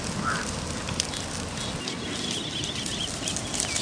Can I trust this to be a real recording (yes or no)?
yes